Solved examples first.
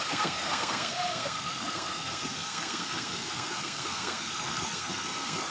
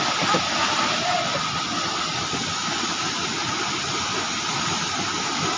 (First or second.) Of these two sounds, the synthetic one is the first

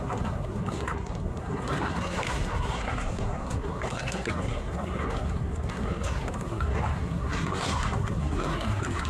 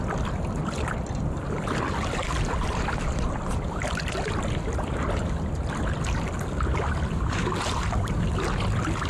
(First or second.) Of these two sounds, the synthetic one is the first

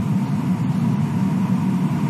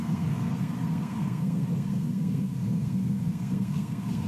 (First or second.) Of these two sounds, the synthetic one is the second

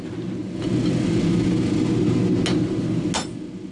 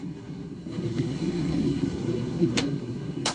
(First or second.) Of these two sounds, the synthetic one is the second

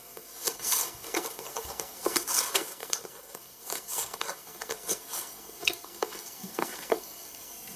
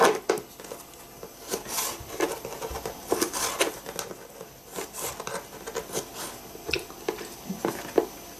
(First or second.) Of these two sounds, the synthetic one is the first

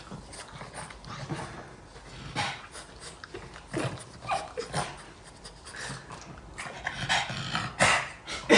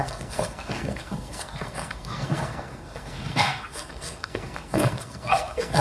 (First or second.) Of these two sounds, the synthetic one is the second